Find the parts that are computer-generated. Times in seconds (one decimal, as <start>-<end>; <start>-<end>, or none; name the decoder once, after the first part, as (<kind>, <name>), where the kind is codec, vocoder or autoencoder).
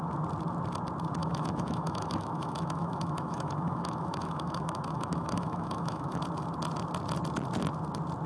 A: 1.2-6.2 (autoencoder, DAC-VAE)